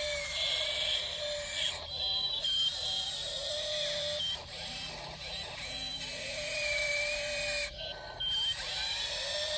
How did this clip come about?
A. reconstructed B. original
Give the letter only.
A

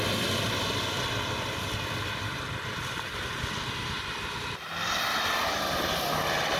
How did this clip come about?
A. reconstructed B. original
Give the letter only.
B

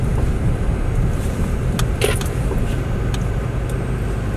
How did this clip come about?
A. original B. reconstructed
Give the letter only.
A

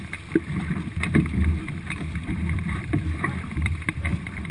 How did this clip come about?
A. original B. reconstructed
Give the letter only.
B